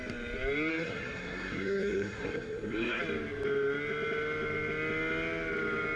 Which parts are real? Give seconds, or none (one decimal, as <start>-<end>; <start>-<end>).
0.0-0.7; 3.0-6.0